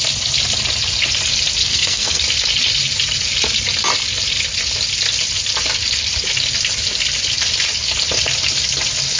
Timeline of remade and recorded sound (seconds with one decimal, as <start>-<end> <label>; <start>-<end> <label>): 0.0-1.6 recorded; 1.6-2.2 remade; 2.2-9.2 recorded